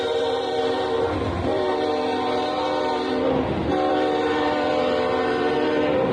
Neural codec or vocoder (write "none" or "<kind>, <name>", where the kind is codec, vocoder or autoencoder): vocoder, BigVGAN v2